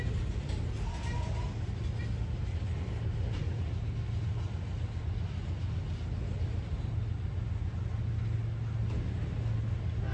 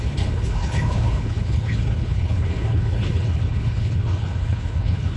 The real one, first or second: first